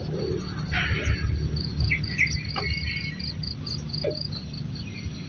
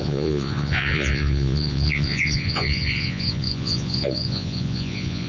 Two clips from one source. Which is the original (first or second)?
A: first